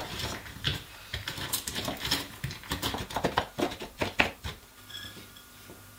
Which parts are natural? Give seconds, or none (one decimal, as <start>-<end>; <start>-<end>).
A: none